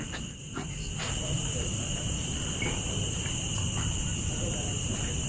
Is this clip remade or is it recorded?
remade